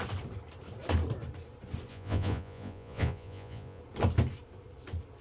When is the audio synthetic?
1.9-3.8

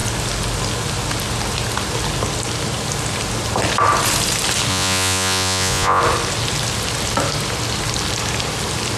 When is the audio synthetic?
4.7-6.0